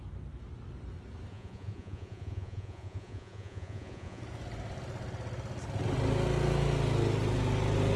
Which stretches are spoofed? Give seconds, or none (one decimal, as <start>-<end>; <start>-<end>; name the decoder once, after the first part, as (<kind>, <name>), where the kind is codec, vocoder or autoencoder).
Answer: 1.3-4.2 (vocoder, Vocos)

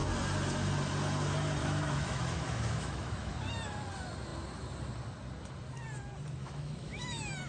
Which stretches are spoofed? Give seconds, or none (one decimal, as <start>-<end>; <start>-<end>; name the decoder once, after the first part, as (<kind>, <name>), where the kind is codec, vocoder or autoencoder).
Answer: 1.6-3.3 (autoencoder, DAC-VAE); 6.4-7.5

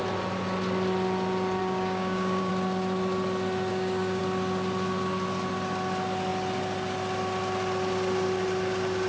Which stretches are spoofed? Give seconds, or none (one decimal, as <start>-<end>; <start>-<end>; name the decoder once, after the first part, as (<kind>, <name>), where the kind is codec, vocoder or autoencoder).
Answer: 1.6-2.5 (codec, DAC); 3.7-4.2